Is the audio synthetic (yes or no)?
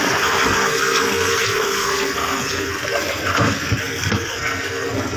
yes